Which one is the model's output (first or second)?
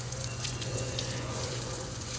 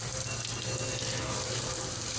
first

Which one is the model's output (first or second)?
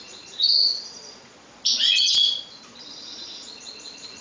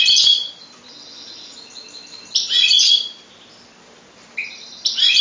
first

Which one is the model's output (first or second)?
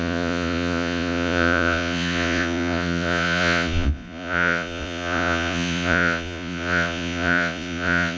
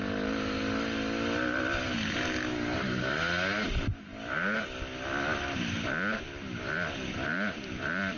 first